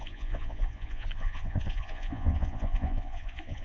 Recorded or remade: remade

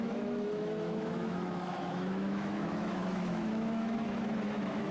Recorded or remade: remade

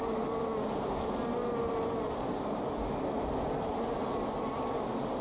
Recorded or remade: recorded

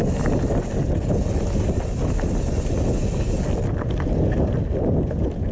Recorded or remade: recorded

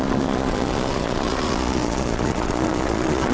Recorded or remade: remade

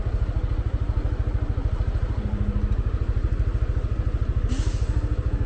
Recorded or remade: recorded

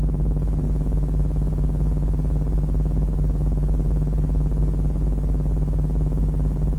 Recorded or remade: recorded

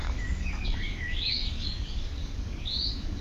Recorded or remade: remade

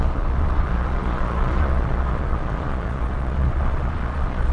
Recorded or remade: remade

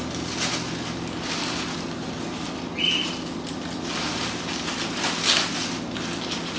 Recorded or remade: recorded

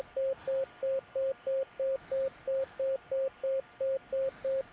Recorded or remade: recorded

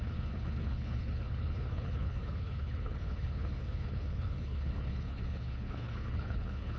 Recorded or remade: remade